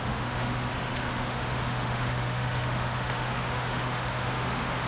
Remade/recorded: remade